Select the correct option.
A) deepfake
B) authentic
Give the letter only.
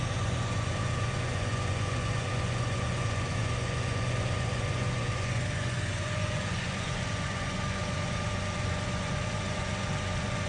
A